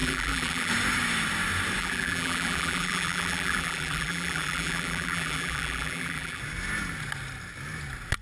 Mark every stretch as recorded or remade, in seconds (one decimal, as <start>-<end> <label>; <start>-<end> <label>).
0.0-0.7 remade; 0.7-1.8 recorded; 1.8-6.4 remade; 6.4-8.2 recorded